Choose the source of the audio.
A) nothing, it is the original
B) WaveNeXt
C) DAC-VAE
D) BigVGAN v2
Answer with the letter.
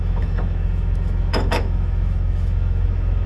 C